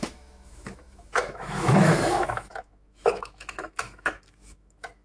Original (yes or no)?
no